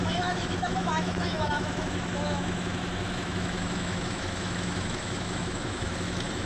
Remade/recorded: remade